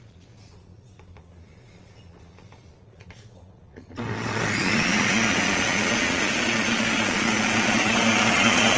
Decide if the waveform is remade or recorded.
remade